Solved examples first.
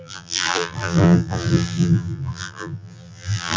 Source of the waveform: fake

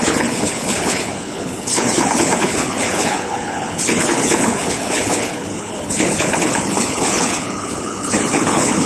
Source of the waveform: fake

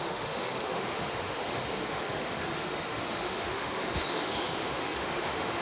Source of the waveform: fake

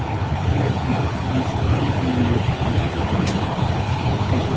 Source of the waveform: fake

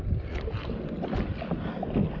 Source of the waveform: real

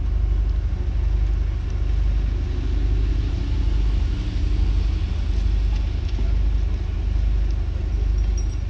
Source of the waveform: real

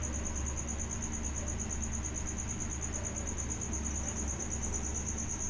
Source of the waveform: real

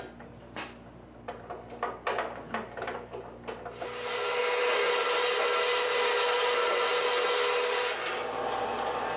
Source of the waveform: real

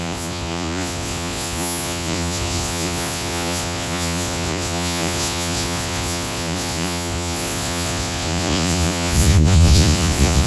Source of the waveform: fake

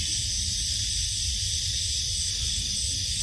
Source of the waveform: real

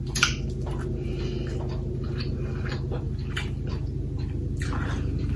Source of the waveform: real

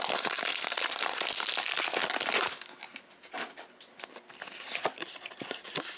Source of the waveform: real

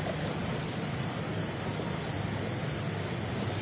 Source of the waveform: real